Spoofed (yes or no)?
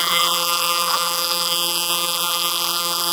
yes